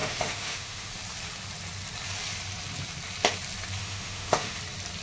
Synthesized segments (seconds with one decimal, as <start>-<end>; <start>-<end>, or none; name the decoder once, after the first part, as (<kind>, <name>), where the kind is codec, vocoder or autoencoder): 0.0-0.9 (autoencoder, DAC-VAE); 3.8-4.6